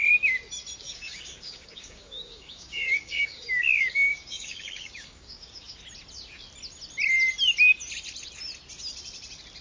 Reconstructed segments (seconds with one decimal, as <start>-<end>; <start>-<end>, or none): 0.8-5.8